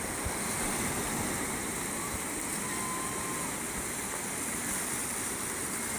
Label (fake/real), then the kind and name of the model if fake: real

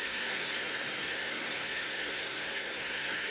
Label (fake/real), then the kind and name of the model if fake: fake, codec, SNAC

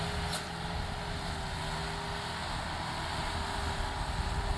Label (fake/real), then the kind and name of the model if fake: real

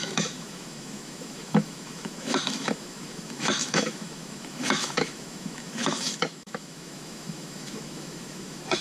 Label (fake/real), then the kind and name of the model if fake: fake, autoencoder, DAC-VAE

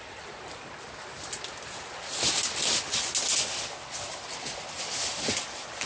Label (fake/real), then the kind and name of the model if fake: real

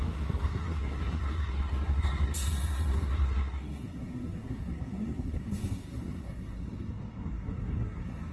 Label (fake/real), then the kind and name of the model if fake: fake, codec, SNAC